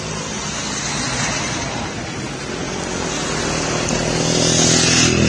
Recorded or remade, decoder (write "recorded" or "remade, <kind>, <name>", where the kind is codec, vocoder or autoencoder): recorded